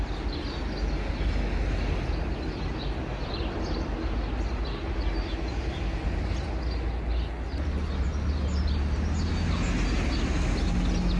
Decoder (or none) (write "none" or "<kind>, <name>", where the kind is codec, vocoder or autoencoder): none